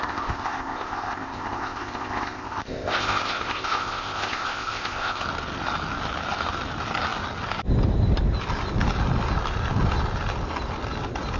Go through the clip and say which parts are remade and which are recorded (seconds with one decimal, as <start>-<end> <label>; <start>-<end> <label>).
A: 0.0-5.2 remade; 5.2-11.4 recorded